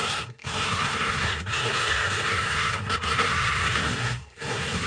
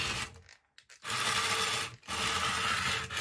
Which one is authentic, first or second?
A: second